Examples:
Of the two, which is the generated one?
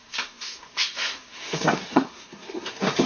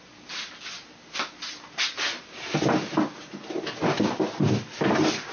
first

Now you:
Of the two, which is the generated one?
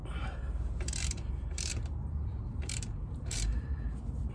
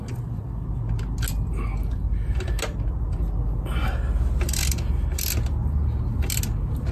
first